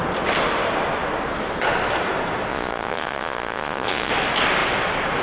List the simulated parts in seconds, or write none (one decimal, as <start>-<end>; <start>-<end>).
2.5-4.1